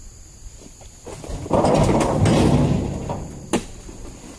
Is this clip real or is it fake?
real